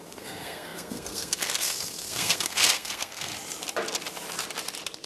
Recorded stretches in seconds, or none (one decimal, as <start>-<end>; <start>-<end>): 3.3-5.1